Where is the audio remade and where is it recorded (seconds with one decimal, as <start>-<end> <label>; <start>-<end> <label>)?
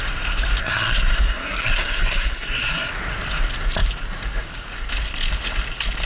0.0-0.6 recorded; 0.6-2.9 remade; 2.9-6.1 recorded